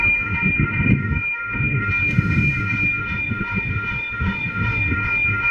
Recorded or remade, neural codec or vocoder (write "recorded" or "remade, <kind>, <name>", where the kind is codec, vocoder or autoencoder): remade, autoencoder, DAC-VAE